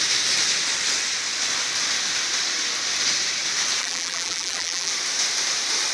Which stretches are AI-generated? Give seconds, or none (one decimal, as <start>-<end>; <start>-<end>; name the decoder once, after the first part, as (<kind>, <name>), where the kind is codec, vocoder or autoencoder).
3.8-4.9 (vocoder, BigVGAN v2)